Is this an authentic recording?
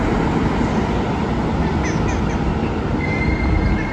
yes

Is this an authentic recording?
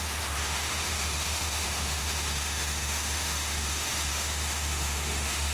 no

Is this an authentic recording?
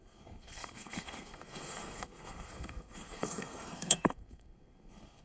no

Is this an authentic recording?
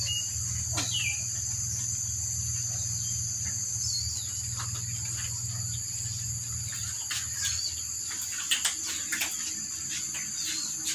yes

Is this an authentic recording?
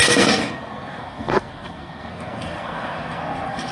no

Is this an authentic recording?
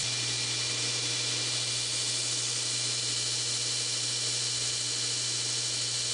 yes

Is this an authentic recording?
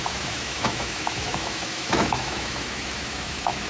no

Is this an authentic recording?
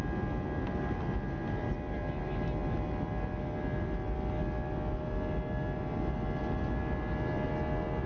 yes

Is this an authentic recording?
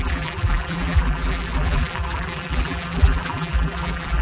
no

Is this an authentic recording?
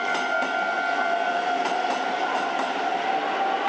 yes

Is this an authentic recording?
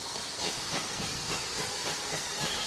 no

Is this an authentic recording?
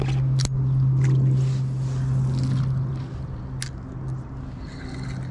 yes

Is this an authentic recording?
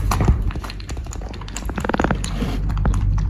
no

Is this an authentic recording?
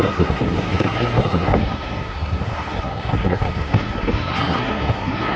no